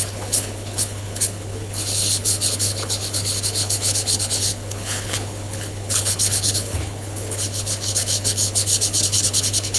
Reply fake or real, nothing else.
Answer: fake